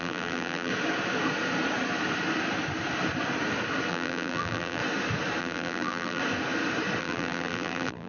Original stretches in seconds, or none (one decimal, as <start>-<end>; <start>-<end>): 0.7-3.9; 4.8-5.4; 6.2-7.0